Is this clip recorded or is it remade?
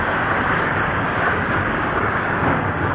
remade